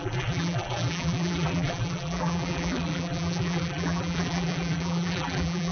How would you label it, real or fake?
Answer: fake